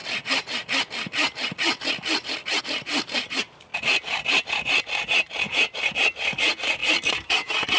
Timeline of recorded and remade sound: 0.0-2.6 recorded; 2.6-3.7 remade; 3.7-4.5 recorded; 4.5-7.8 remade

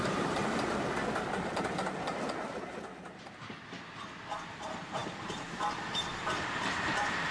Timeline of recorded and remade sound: 0.0-0.4 remade; 0.4-4.5 recorded; 4.5-7.3 remade

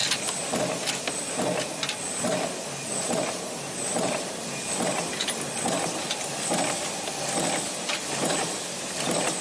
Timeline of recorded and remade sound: 0.0-9.4 recorded

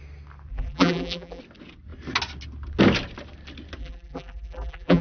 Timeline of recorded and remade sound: 0.0-0.5 recorded; 0.5-1.4 remade; 1.4-3.8 recorded; 3.8-5.0 remade

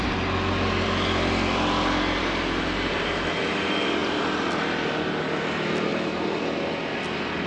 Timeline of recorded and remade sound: 0.0-2.2 recorded; 2.2-3.1 remade; 3.1-7.5 recorded